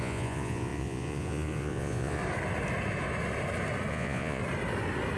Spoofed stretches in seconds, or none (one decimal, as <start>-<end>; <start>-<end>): 0.0-2.2; 3.9-4.4